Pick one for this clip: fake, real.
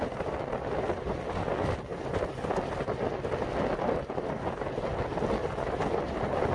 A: real